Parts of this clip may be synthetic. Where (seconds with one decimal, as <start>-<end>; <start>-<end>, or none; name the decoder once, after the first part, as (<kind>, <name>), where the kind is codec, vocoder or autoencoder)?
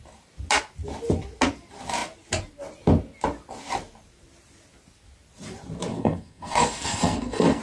5.9-7.6 (codec, SNAC)